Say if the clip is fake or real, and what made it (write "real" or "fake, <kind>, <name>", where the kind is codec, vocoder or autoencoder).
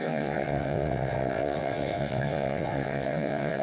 fake, vocoder, WaveNeXt